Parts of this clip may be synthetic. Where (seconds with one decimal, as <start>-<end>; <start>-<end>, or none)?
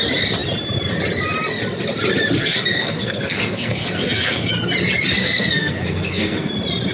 2.4-4.5; 5.2-6.5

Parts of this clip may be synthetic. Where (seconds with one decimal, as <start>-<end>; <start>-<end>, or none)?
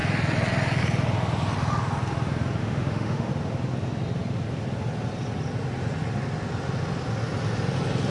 2.6-3.3